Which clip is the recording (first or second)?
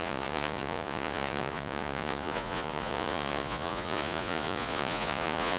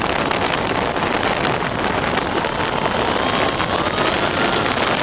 second